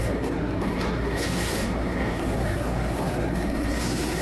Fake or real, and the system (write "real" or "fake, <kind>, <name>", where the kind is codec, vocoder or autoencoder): fake, codec, SNAC